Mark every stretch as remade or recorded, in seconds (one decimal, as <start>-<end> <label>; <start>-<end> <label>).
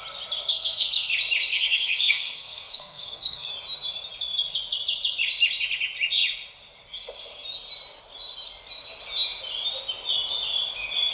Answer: 0.0-0.5 recorded; 0.5-1.1 remade; 1.1-1.5 recorded; 1.5-3.5 remade; 3.5-11.1 recorded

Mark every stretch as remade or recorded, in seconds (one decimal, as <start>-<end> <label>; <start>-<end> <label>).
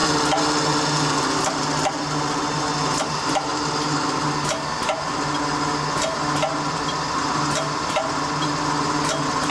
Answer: 0.0-9.5 recorded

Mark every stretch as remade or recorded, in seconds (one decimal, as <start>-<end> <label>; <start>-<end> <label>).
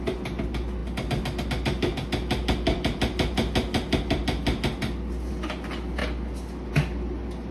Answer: 0.0-7.5 recorded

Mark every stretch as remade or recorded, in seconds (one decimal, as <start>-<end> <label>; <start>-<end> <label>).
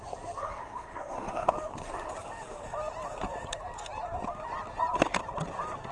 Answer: 0.0-0.4 recorded; 0.4-1.5 remade; 1.5-5.9 recorded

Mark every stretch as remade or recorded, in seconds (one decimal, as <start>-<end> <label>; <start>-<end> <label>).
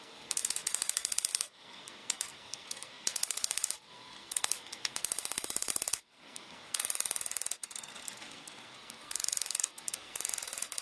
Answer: 0.0-10.8 remade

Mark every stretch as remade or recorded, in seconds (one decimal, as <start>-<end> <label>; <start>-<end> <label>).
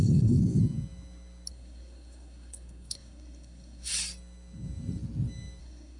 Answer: 0.0-0.4 remade; 0.4-1.5 recorded; 1.5-3.9 remade; 3.9-5.6 recorded; 5.6-6.0 remade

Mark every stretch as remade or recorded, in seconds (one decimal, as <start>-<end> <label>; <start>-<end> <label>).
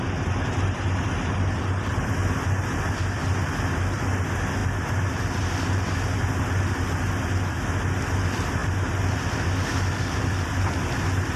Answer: 0.0-11.4 recorded